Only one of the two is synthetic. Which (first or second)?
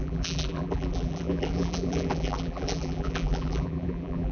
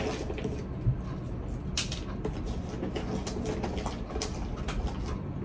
first